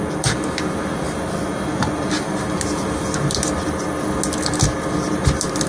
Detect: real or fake real